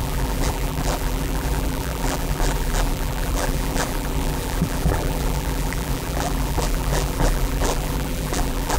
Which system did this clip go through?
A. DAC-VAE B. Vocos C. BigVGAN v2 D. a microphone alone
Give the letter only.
C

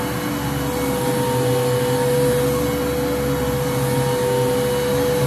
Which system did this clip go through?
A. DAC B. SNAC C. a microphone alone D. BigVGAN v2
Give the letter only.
C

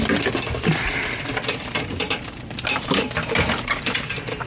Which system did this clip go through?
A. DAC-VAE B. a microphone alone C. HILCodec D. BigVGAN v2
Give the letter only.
D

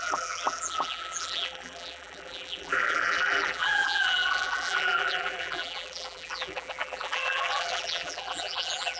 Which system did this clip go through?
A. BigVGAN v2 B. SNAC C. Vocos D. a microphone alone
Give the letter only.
A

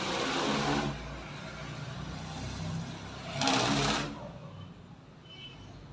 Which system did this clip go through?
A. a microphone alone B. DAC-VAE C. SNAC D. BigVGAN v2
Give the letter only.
A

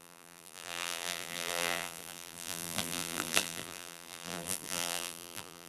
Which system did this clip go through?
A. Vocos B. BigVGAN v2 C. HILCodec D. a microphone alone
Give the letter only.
B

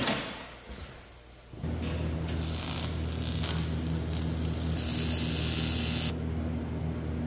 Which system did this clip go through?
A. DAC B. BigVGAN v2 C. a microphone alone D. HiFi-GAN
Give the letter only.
C